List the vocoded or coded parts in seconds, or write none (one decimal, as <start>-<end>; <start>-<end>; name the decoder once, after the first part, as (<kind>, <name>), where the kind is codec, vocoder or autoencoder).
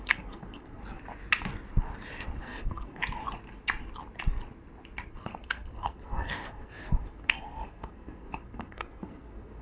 0.0-0.8 (codec, SNAC); 2.4-3.0; 5.1-9.6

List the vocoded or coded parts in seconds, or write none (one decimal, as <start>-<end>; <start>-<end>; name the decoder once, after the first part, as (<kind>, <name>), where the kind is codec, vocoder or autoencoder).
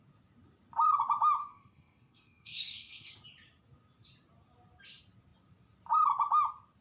1.4-3.1 (codec, SNAC)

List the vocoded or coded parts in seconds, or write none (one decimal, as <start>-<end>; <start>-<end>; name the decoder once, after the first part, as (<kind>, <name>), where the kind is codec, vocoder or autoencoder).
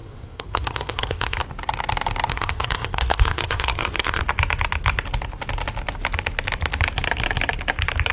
0.0-1.4 (codec, SNAC); 2.3-4.2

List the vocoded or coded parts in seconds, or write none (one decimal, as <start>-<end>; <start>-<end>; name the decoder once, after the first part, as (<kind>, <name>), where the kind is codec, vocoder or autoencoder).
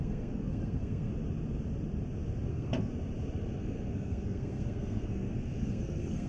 0.0-1.1 (codec, SNAC); 2.5-2.9; 3.6-6.3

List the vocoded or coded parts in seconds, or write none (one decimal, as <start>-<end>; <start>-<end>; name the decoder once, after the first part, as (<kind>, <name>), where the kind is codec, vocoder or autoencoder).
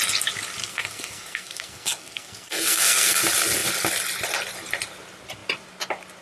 0.6-3.2 (codec, SNAC)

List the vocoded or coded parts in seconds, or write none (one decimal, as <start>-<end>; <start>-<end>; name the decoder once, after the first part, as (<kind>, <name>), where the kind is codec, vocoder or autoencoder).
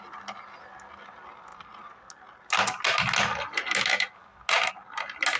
none